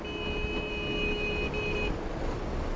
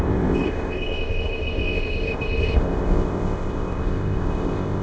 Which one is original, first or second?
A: first